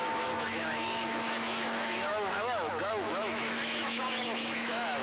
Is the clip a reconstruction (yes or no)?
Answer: yes